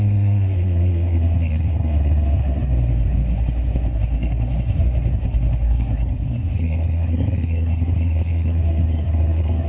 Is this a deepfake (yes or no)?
yes